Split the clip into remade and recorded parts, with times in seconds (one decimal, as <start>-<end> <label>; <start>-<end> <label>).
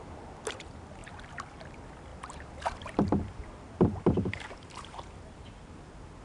0.0-1.0 recorded; 1.0-1.7 remade; 1.7-2.1 recorded; 2.1-5.8 remade; 5.8-6.2 recorded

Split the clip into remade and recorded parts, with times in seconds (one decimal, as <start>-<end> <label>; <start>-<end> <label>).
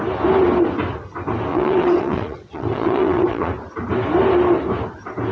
0.0-1.5 recorded; 1.5-3.5 remade; 3.5-5.3 recorded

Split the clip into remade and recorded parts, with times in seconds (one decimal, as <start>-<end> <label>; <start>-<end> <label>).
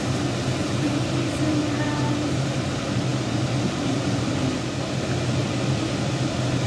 0.0-0.6 recorded; 0.6-1.6 remade; 1.6-6.7 recorded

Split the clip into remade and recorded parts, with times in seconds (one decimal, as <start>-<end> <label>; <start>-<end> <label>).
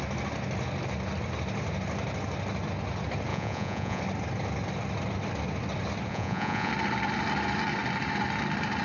0.0-3.3 recorded; 3.3-4.0 remade; 4.0-6.1 recorded; 6.1-6.7 remade; 6.7-8.8 recorded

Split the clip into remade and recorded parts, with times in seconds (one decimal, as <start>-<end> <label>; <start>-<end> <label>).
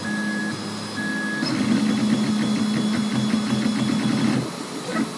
0.0-5.2 recorded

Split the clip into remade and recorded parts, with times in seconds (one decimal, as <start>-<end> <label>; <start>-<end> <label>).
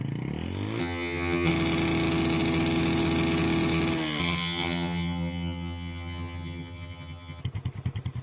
0.0-0.8 recorded; 0.8-1.5 remade; 1.5-4.2 recorded; 4.2-7.4 remade; 7.4-8.2 recorded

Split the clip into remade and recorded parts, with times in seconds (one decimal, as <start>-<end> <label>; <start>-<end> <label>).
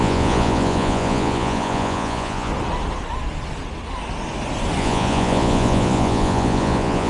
0.0-2.5 remade; 2.5-4.8 recorded; 4.8-7.1 remade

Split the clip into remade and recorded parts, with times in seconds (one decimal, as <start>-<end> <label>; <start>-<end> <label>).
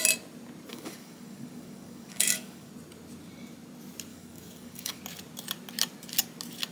0.0-0.7 recorded; 0.7-2.7 remade; 2.7-4.1 recorded; 4.1-5.0 remade; 5.0-6.7 recorded